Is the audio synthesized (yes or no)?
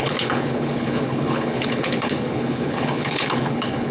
yes